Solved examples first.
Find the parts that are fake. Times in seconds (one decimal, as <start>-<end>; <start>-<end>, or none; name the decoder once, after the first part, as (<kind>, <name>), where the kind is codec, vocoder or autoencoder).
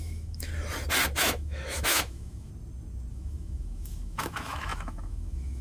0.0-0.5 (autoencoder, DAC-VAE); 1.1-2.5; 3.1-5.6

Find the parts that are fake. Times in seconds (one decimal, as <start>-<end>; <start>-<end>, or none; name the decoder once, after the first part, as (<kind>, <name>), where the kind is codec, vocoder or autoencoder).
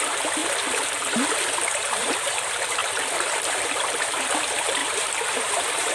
0.0-0.4 (vocoder, BigVGAN v2); 1.7-5.9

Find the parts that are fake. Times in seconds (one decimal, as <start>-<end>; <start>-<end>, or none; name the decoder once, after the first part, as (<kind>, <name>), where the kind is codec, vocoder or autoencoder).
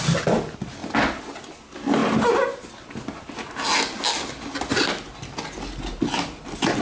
none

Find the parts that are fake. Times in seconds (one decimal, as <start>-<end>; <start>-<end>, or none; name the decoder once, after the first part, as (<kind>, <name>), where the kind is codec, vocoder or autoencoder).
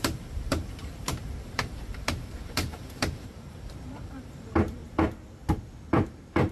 0.0-4.8 (vocoder, BigVGAN v2); 5.9-6.5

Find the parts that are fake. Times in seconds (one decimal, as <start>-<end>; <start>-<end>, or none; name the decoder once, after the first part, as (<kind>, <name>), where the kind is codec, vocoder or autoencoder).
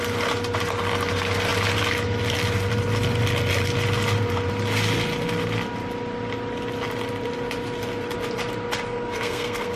8.9-9.8 (codec, SNAC)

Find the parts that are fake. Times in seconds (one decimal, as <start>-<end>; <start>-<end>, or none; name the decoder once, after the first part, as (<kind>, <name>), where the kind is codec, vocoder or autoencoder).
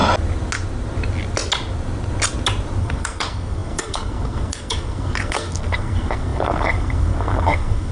2.8-7.9 (codec, SNAC)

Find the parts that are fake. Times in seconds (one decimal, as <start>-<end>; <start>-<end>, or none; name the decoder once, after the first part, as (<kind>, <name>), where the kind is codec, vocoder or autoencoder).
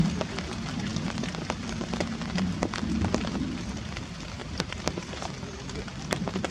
4.4-5.3 (vocoder, BigVGAN v2)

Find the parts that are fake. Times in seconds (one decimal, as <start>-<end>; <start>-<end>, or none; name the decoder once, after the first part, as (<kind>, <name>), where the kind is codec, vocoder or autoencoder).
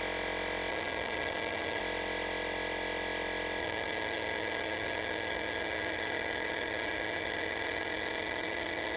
0.7-1.8 (vocoder, HiFi-GAN); 3.6-9.0